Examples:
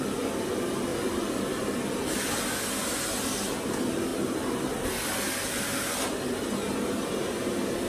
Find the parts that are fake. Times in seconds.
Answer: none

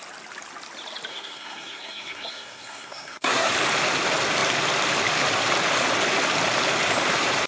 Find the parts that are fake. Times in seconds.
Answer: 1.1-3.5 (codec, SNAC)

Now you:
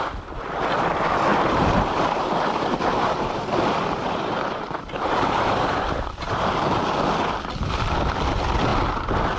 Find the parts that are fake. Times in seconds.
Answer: 1.3-6.5 (vocoder, BigVGAN v2)

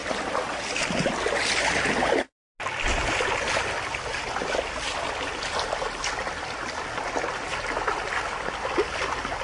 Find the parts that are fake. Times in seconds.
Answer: 0.0-0.9 (vocoder, BigVGAN v2)

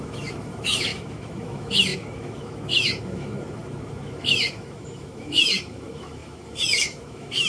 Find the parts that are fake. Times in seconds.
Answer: 0.0-7.5 (autoencoder, DAC-VAE)